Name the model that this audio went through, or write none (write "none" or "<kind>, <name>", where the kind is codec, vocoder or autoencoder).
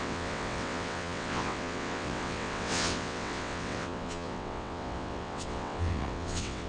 vocoder, WaveNeXt